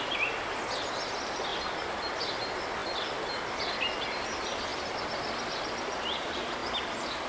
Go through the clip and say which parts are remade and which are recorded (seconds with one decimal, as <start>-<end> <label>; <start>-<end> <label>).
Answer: 0.0-7.3 recorded